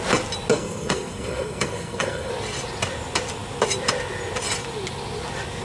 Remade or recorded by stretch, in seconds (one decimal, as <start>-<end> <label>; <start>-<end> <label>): 0.0-0.5 recorded; 0.5-2.3 remade; 2.3-5.6 recorded